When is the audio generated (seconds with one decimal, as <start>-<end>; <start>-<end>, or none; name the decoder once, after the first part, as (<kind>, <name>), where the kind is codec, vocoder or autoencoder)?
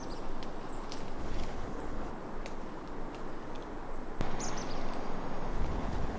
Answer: 1.2-2.1 (codec, HILCodec); 5.5-6.2